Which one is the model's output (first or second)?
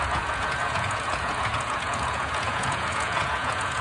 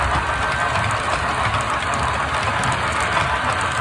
first